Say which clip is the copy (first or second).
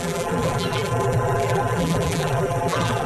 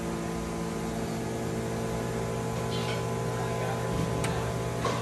first